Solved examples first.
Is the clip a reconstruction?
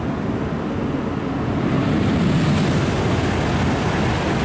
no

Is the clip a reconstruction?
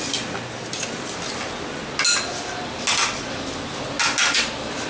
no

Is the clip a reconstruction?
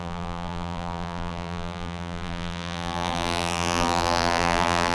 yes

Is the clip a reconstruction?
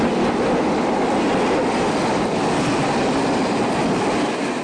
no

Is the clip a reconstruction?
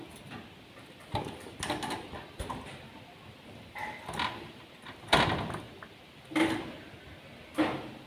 no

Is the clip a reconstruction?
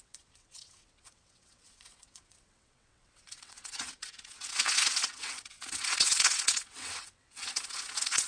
yes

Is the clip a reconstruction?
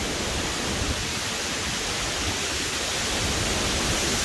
no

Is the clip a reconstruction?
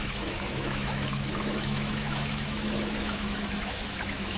yes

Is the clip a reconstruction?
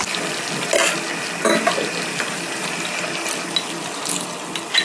no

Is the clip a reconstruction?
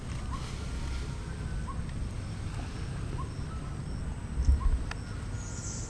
no